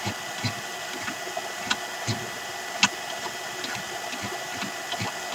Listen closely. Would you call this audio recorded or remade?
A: recorded